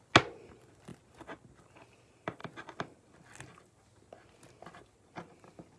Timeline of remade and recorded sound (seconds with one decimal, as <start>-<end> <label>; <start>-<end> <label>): 0.0-5.8 recorded